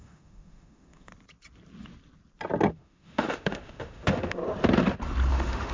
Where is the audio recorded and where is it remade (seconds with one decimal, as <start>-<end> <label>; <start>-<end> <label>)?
0.0-1.1 remade; 1.1-2.7 recorded; 2.7-4.4 remade; 4.4-5.3 recorded; 5.3-5.7 remade